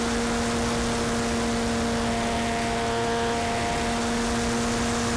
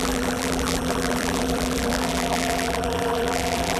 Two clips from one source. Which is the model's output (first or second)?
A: second